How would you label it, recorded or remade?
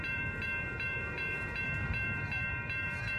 remade